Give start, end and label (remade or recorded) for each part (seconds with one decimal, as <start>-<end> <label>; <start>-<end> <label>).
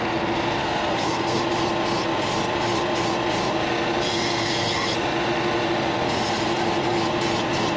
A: 0.0-0.6 recorded; 0.6-1.4 remade; 1.4-7.8 recorded